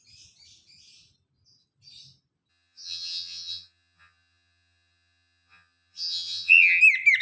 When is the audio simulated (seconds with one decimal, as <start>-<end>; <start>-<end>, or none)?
2.5-6.8